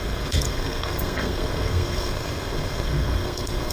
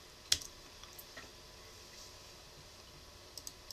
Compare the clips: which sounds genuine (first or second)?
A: second